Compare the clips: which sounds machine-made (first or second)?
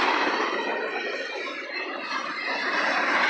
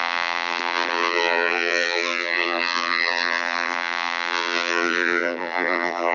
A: second